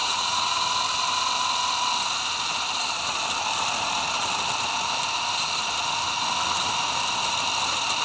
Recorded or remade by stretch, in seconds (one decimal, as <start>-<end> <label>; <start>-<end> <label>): 0.0-0.6 remade; 0.6-8.0 recorded